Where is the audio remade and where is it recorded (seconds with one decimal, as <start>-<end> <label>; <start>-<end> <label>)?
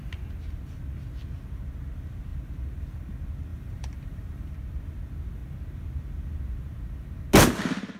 0.0-3.5 recorded; 3.5-4.5 remade; 4.5-8.0 recorded